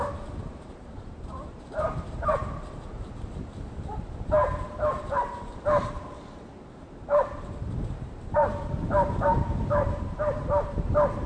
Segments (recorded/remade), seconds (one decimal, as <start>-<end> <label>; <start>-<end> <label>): 0.0-11.3 remade